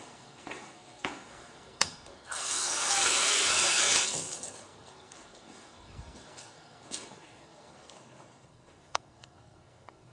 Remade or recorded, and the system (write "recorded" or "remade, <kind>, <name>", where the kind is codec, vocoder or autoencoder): remade, codec, SNAC